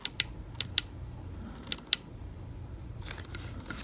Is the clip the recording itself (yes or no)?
yes